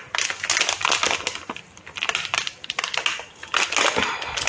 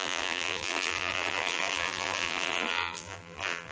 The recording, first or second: first